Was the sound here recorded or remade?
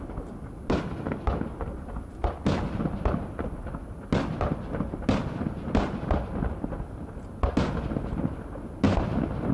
recorded